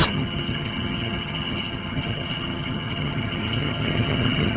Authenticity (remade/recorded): remade